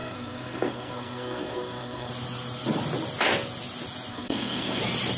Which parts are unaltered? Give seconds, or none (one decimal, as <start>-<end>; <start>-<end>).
2.1-4.1; 4.8-5.2